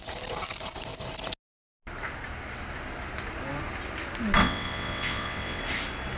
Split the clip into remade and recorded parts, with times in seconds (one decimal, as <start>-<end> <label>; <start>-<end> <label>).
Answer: 0.0-4.4 recorded; 4.4-5.6 remade; 5.6-6.2 recorded